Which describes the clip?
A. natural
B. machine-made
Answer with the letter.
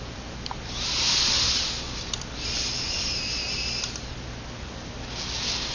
A